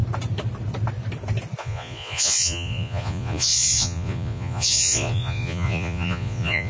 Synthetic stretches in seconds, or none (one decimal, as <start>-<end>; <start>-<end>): 1.6-6.7